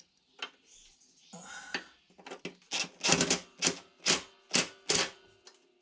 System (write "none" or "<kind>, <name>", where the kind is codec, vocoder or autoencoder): none